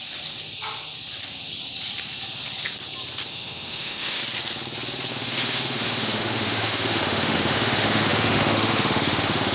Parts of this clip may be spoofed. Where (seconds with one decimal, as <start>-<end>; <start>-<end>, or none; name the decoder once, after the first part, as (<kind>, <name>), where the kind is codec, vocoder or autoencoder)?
3.3-4.2 (autoencoder, DAC-VAE); 5.1-9.5